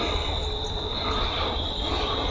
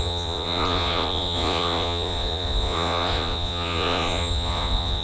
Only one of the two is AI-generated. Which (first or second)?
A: second